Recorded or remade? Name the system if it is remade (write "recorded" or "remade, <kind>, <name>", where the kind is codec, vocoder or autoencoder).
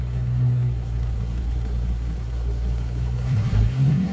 remade, codec, SNAC